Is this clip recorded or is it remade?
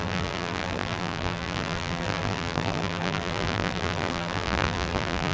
remade